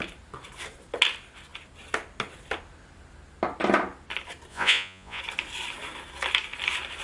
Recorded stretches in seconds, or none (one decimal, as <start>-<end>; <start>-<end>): 0.0-4.5; 5.2-7.0